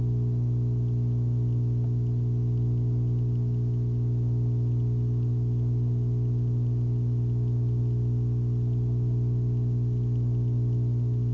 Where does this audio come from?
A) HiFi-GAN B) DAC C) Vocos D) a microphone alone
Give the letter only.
D